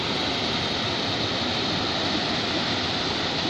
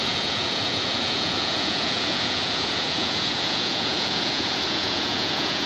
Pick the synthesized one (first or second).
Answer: second